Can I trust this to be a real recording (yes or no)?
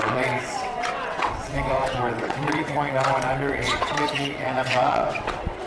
no